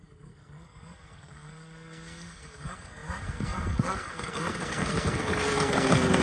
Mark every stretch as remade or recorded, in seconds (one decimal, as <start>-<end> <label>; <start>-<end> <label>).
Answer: 0.0-6.2 remade